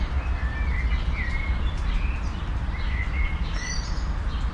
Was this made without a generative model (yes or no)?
yes